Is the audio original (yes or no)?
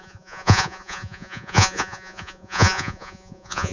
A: no